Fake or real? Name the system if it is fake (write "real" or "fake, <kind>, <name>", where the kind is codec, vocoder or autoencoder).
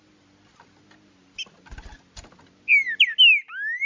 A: real